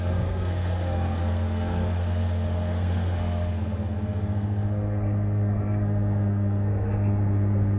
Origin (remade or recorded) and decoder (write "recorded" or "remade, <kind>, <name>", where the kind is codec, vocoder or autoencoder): remade, codec, SNAC